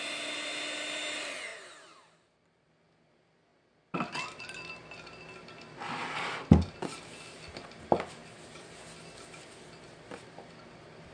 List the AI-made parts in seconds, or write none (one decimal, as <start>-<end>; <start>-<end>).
1.5-2.7